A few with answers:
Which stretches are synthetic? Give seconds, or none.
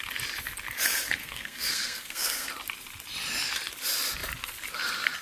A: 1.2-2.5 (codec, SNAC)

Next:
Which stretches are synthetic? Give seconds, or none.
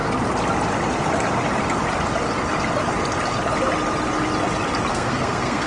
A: 4.9-5.7 (codec, SNAC)